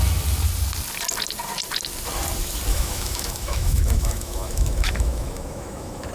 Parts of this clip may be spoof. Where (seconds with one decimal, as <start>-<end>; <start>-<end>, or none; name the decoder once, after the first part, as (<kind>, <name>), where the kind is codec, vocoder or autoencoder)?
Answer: 2.7-6.1 (autoencoder, DAC-VAE)